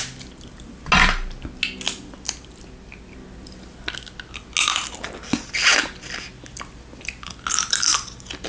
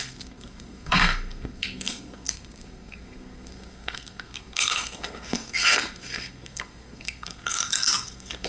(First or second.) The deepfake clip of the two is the second